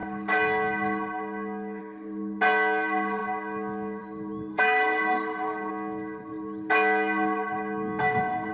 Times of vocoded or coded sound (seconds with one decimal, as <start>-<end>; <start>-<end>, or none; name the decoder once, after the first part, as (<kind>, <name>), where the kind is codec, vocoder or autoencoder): 4.5-5.7 (codec, SNAC); 8.0-8.5